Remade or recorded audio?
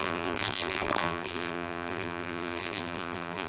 remade